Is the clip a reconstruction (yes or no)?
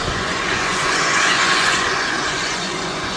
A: yes